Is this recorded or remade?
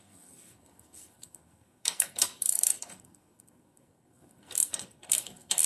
remade